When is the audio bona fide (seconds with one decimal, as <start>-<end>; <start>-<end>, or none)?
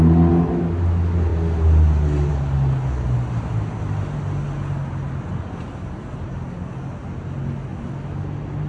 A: 0.0-8.7